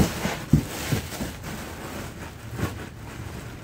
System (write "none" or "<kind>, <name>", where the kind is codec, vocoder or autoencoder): none